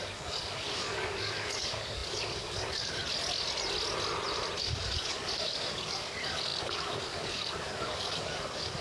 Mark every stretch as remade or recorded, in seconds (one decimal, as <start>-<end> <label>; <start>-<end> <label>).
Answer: 0.0-3.0 remade; 3.0-4.6 recorded; 4.6-8.8 remade